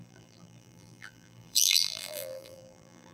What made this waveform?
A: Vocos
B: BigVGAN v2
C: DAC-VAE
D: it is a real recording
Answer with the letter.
B